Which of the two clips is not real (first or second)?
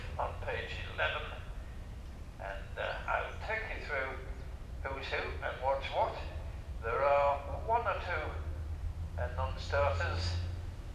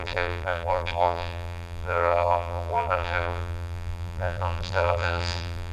second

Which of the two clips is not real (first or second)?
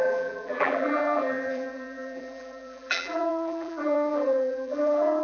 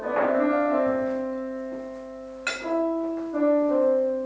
first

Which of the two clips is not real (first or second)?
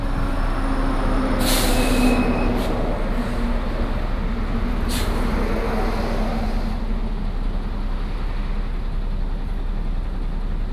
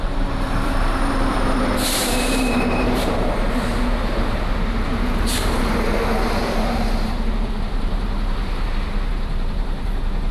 second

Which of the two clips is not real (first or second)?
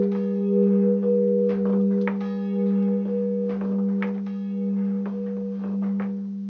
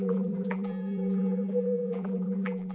second